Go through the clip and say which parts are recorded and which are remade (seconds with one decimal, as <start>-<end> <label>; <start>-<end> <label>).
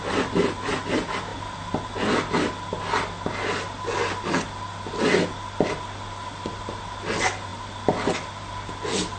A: 0.0-9.2 recorded